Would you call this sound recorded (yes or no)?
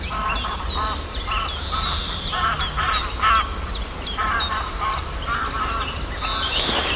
yes